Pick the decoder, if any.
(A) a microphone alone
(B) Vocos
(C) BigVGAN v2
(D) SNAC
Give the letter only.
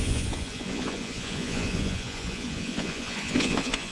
B